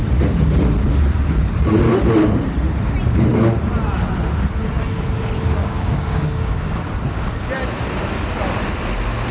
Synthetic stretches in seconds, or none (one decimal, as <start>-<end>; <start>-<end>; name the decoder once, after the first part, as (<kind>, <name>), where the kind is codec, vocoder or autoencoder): 5.6-6.8 (codec, DAC)